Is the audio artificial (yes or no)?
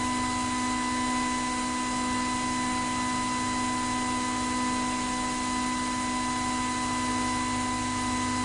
no